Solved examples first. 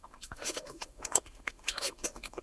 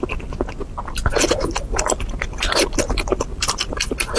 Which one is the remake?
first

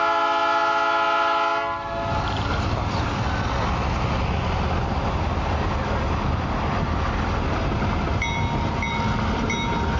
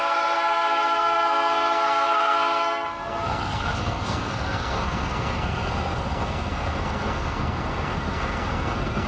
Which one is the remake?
second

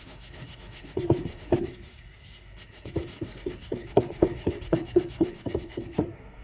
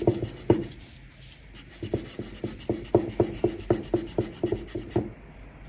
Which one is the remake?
first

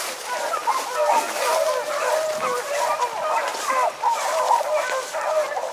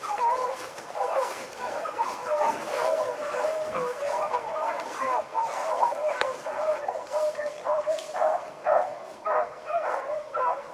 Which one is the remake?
second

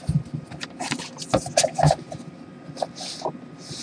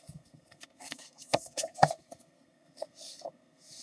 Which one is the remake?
second